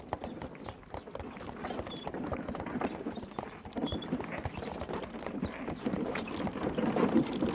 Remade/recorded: recorded